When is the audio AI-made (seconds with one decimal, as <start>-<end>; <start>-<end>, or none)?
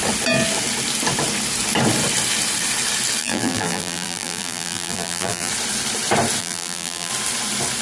3.2-5.5; 6.4-7.1